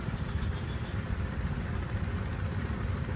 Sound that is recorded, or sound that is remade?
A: recorded